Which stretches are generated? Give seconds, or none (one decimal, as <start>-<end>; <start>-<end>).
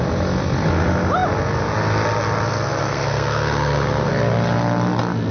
2.8-4.1